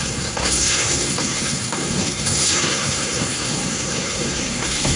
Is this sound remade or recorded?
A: remade